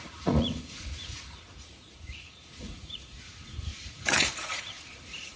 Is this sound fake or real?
fake